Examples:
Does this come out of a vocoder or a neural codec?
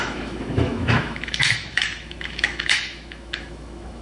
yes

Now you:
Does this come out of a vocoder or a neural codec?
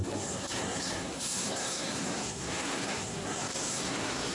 yes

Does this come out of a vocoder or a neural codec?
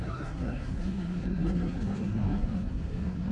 yes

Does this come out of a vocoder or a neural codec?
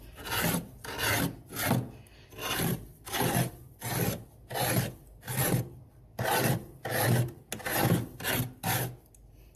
no